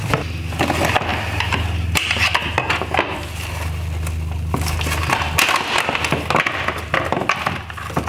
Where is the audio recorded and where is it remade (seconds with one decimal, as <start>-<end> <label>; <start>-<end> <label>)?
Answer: 0.0-8.1 recorded